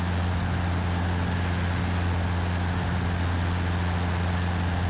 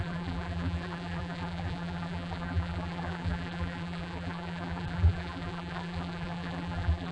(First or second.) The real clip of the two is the first